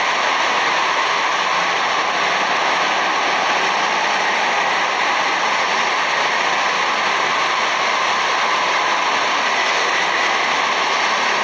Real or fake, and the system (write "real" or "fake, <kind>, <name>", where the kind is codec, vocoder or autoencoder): real